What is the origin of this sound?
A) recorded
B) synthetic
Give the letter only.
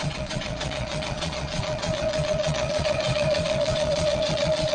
B